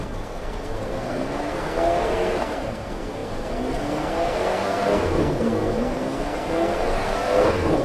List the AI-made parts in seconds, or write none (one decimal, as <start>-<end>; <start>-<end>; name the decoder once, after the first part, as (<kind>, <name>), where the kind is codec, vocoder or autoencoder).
0.0-7.8 (codec, SNAC)